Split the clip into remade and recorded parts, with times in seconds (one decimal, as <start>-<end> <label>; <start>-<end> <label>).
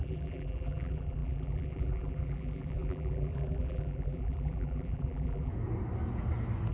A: 0.0-5.5 remade; 5.5-6.7 recorded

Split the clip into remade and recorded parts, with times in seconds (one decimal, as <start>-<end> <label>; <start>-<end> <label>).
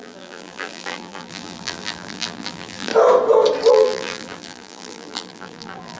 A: 0.0-2.9 remade; 2.9-3.7 recorded; 3.7-6.0 remade